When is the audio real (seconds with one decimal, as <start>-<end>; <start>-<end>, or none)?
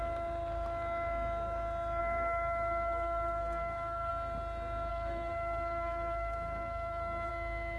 0.0-2.0; 4.1-4.9; 7.3-7.8